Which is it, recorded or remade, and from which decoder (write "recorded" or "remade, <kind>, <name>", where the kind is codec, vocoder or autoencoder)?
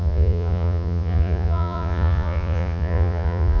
remade, vocoder, Vocos